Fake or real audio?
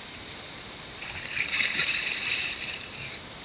fake